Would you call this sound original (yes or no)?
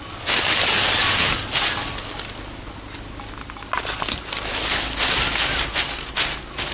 yes